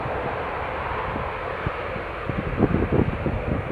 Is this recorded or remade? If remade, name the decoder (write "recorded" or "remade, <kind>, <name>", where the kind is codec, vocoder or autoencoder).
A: recorded